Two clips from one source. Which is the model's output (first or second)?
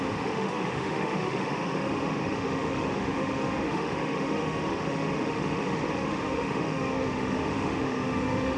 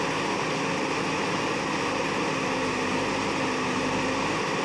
first